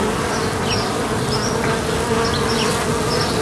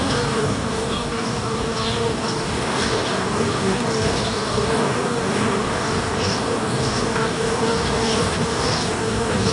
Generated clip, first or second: second